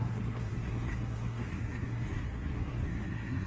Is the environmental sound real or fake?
fake